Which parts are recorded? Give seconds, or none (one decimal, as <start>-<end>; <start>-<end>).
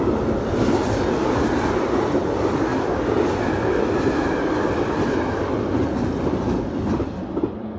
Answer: 0.0-7.8